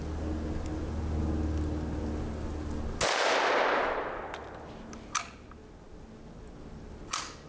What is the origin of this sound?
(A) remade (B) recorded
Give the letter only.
B